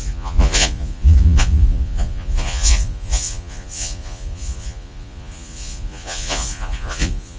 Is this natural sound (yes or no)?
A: no